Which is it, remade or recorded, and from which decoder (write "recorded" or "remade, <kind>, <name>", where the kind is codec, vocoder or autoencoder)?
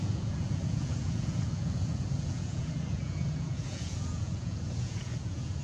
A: remade, vocoder, Vocos